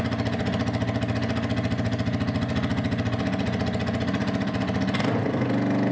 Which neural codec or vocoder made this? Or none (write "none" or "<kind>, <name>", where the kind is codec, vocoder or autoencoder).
none